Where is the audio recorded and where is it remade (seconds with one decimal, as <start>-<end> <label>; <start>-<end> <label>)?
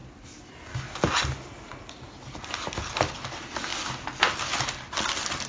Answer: 0.0-5.5 recorded